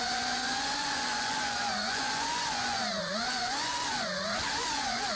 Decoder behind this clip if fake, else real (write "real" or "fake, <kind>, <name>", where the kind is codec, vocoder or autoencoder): fake, vocoder, Vocos